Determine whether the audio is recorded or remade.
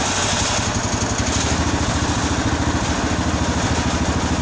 recorded